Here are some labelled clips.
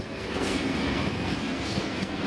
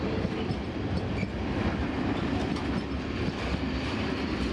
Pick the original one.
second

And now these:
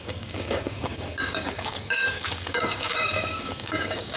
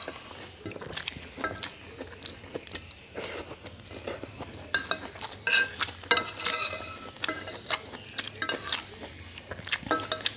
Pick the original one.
second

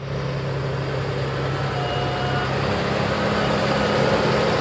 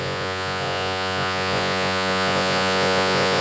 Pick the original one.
first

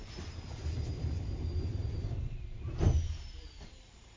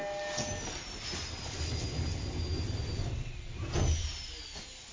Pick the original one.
second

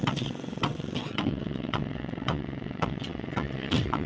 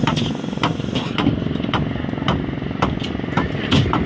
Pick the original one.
second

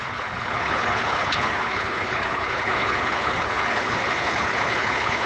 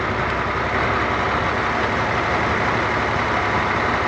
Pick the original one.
second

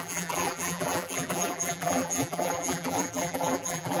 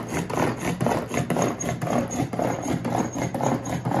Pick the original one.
second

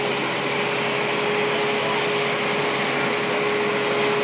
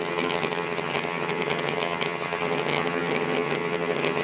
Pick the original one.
first